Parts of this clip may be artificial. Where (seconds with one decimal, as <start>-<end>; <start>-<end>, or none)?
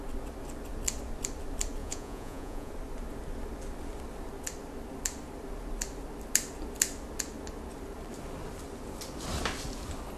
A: 1.8-2.7